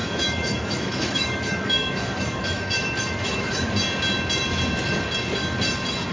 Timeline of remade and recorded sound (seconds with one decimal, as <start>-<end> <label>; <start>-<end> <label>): 0.0-3.7 remade; 3.7-6.1 recorded